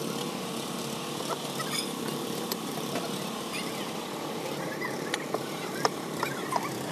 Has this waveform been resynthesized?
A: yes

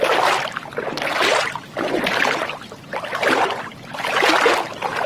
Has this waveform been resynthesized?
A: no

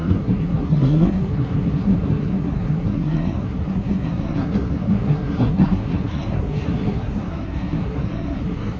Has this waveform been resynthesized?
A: yes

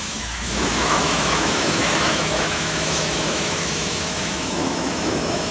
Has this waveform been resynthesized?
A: yes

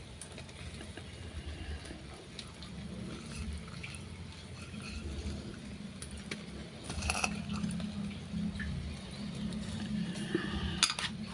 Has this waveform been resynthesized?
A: no